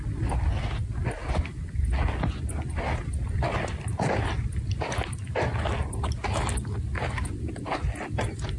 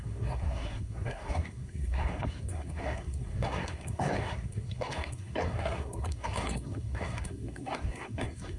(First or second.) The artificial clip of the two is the second